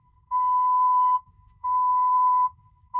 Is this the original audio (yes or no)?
no